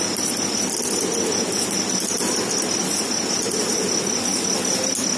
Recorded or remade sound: recorded